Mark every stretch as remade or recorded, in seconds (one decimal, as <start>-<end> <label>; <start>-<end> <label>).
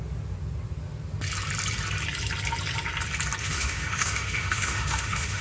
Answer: 0.0-3.4 recorded; 3.4-5.4 remade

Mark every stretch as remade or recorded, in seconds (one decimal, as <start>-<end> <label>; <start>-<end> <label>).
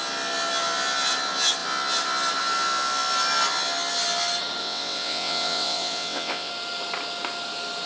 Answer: 0.0-4.6 recorded; 4.6-6.5 remade; 6.5-7.9 recorded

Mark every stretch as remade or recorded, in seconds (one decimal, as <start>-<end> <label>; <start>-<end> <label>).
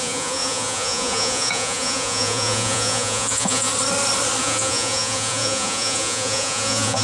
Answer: 0.0-3.7 remade; 3.7-4.4 recorded; 4.4-7.0 remade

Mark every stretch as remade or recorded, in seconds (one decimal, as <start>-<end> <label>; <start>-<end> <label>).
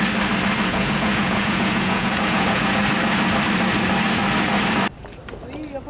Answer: 0.0-0.7 recorded; 0.7-2.8 remade; 2.8-5.9 recorded